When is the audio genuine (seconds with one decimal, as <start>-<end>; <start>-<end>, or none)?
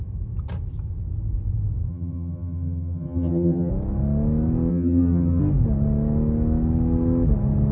0.0-1.9; 3.7-4.7; 5.4-7.7